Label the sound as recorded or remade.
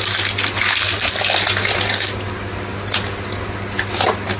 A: recorded